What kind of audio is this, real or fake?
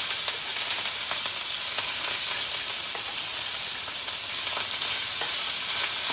real